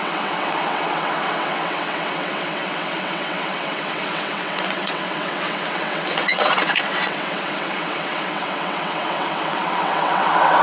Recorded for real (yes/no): no